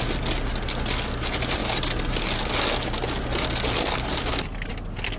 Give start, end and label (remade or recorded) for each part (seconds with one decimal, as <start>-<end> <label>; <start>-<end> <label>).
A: 0.0-5.2 recorded